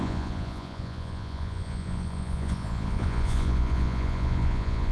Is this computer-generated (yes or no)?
yes